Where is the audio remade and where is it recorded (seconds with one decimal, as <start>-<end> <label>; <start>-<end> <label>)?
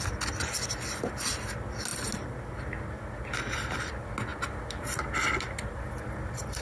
0.0-6.6 recorded